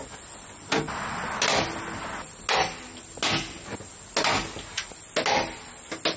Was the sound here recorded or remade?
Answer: recorded